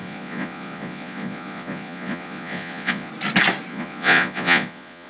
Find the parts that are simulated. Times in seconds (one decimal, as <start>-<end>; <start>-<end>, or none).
0.0-3.1; 3.7-5.1